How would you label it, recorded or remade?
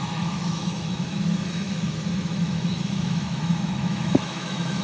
remade